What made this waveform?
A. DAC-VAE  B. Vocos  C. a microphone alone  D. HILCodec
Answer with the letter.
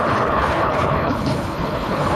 D